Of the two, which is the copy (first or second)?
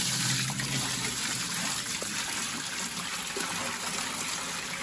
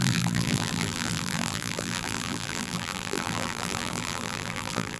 second